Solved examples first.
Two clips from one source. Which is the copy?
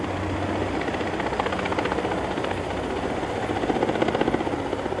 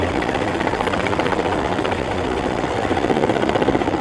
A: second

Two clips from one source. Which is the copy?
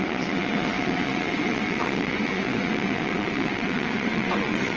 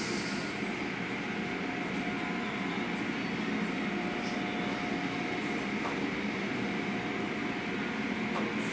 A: first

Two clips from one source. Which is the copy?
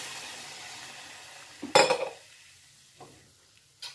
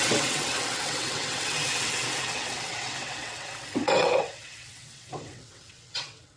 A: second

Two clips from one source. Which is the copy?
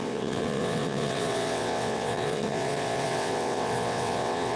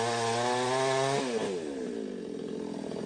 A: first